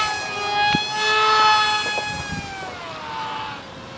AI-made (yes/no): no